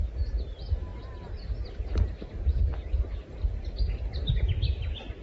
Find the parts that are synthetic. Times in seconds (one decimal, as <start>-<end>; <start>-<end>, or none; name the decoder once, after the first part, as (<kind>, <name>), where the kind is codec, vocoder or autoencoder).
none